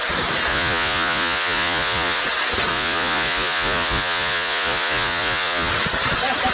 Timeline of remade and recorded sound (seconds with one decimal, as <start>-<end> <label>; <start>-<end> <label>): 0.0-0.5 recorded; 0.5-2.2 remade; 2.2-2.7 recorded; 2.7-5.7 remade; 5.7-6.5 recorded